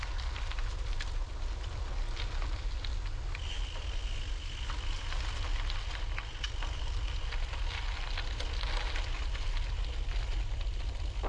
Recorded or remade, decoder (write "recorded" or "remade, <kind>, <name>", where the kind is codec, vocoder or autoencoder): recorded